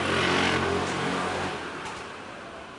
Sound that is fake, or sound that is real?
real